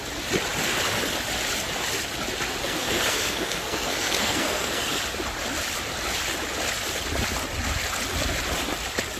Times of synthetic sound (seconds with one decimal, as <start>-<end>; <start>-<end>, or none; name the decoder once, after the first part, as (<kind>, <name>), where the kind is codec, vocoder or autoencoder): 2.6-5.0 (codec, SNAC)